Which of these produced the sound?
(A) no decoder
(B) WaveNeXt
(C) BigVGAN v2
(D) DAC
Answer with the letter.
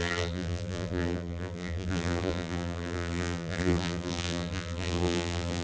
C